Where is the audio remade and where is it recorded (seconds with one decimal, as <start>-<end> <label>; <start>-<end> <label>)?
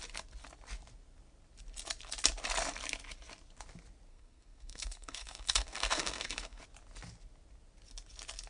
0.0-4.1 recorded; 4.1-6.6 remade; 6.6-8.5 recorded